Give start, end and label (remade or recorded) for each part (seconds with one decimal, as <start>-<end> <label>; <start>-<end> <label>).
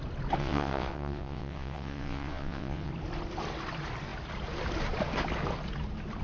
0.0-0.4 recorded; 0.4-2.9 remade; 2.9-6.2 recorded